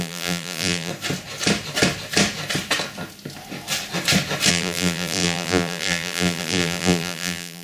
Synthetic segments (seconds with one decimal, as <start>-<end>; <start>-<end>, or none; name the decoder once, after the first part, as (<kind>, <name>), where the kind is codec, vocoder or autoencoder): 0.0-0.9 (vocoder, BigVGAN v2); 4.5-7.6